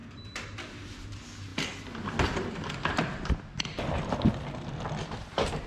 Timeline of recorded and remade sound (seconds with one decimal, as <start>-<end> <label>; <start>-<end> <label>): 0.0-1.1 remade; 1.1-5.7 recorded